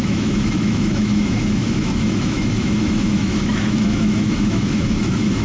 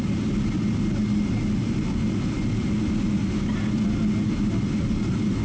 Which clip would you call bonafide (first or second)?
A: second